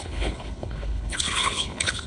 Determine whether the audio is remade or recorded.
remade